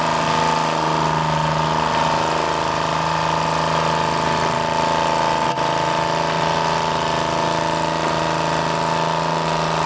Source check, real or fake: real